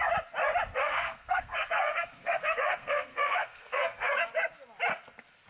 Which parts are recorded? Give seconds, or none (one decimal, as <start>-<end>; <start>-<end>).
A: 0.0-0.8; 4.1-5.5